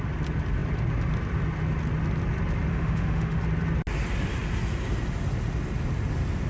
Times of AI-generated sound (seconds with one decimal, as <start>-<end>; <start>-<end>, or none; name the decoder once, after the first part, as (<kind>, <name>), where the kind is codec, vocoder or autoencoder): 2.7-3.4 (autoencoder, DAC-VAE)